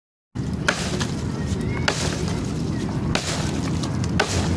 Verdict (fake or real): real